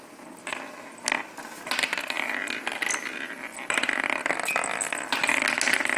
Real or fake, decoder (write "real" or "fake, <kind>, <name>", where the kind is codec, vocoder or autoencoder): real